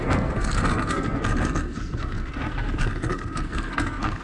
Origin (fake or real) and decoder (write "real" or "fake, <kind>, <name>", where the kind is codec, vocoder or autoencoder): fake, codec, SNAC